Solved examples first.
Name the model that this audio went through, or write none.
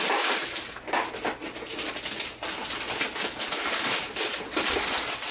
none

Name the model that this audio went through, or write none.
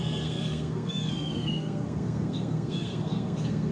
codec, SNAC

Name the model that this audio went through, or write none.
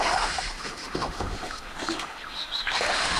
autoencoder, DAC-VAE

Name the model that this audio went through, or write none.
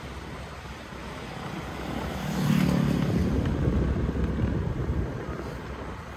none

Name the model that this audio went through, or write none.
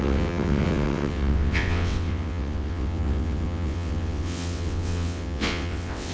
vocoder, WaveNeXt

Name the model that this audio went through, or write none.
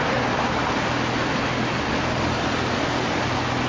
none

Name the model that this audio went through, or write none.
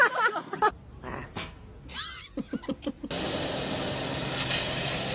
none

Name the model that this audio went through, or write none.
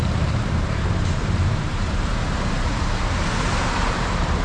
vocoder, BigVGAN v2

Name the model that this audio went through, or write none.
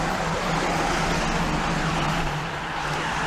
none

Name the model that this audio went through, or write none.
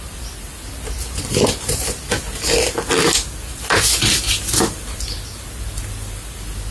none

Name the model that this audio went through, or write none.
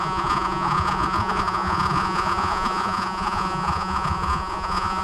vocoder, Vocos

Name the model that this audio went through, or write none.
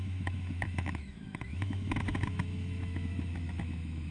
autoencoder, DAC-VAE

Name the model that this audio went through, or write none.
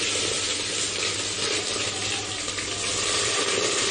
none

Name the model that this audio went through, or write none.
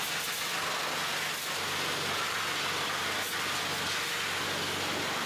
none